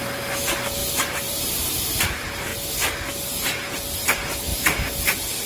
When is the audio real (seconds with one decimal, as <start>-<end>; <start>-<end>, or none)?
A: 0.0-0.8; 2.0-5.5